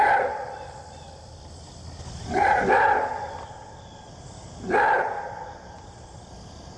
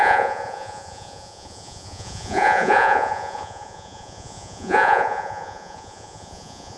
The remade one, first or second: second